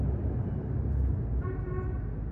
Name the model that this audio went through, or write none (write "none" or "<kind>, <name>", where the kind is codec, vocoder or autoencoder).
none